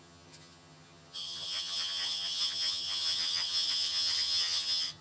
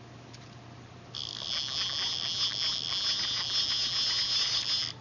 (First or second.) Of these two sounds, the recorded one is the second